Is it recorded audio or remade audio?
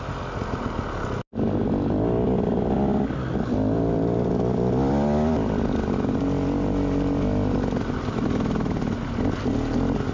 recorded